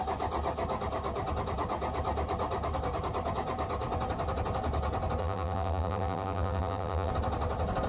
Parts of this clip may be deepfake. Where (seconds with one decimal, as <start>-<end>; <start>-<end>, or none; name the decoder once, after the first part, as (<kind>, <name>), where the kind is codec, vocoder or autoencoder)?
5.2-7.1 (vocoder, BigVGAN v2)